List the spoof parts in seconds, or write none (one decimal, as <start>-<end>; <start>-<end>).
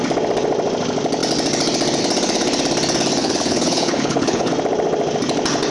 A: 3.2-4.5